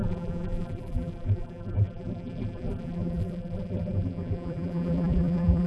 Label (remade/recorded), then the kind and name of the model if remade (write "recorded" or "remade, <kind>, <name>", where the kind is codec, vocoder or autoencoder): remade, vocoder, BigVGAN v2